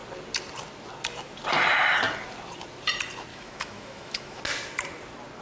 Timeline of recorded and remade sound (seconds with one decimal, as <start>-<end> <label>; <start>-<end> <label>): 0.0-3.3 recorded; 3.3-4.4 remade; 4.4-5.4 recorded